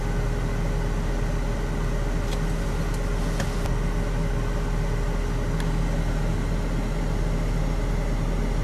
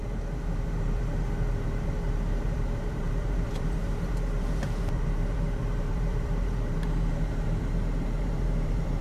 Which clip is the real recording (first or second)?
first